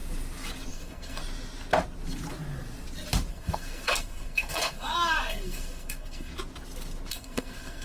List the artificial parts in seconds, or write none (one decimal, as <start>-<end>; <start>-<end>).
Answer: 0.7-1.2; 3.3-6.3; 7.1-7.8